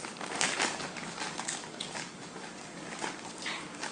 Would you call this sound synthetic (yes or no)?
yes